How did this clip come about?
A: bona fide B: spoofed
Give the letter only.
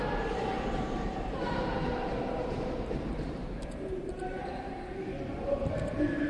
B